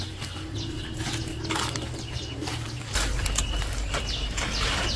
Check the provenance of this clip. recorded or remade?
recorded